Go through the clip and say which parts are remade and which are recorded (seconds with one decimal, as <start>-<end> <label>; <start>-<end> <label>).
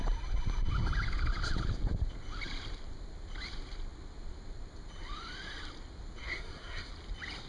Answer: 0.0-6.2 recorded; 6.2-6.9 remade; 6.9-7.5 recorded